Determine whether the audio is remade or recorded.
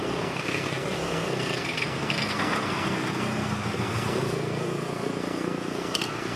remade